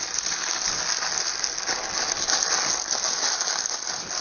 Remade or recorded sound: recorded